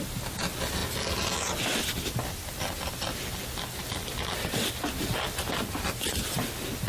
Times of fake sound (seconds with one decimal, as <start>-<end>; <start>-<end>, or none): none